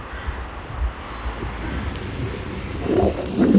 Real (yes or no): yes